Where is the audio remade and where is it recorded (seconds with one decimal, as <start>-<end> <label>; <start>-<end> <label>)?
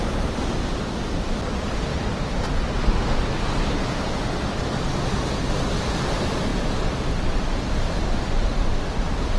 0.0-9.4 recorded